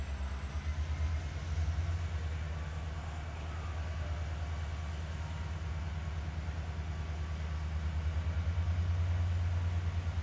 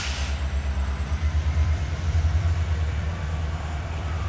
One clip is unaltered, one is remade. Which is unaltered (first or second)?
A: first